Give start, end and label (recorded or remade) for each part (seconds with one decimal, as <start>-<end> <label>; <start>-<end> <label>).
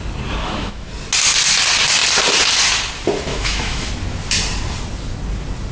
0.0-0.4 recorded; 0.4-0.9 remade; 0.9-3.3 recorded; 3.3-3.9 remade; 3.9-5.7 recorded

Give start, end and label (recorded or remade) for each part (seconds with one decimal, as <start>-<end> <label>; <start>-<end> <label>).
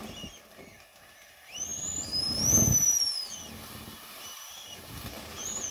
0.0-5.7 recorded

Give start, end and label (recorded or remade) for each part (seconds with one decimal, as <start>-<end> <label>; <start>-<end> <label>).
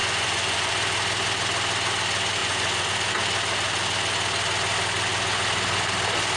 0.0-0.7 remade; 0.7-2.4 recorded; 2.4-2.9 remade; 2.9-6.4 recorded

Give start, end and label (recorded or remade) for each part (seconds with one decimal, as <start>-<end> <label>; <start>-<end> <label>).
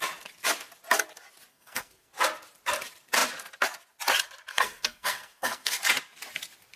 0.0-1.5 recorded; 1.5-2.1 remade; 2.1-4.5 recorded; 4.5-5.8 remade; 5.8-6.8 recorded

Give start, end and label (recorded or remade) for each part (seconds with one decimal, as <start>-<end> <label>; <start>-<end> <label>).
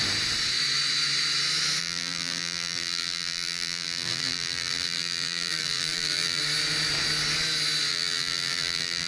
0.0-1.8 recorded; 1.8-6.4 remade; 6.4-7.9 recorded; 7.9-9.1 remade